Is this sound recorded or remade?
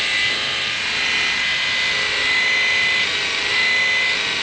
recorded